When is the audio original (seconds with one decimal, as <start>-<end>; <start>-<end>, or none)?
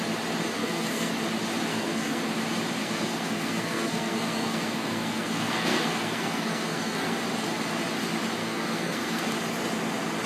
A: 0.0-0.6; 1.1-1.7; 2.2-2.8; 7.2-8.4; 9.3-10.3